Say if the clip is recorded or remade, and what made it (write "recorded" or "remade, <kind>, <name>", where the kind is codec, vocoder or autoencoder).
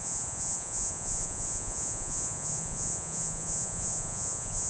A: remade, vocoder, Vocos